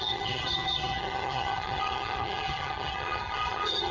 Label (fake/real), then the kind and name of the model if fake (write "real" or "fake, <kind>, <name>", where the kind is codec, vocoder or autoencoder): fake, vocoder, HiFi-GAN